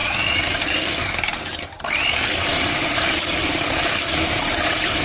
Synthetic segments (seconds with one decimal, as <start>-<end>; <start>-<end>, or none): 0.0-5.0